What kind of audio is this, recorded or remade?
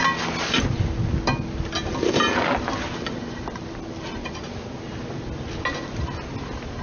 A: recorded